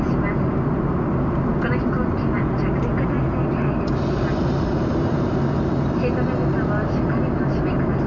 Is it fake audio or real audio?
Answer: real